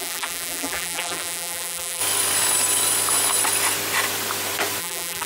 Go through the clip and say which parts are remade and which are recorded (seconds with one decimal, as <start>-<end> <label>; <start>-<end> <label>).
0.0-2.0 remade; 2.0-4.8 recorded; 4.8-5.3 remade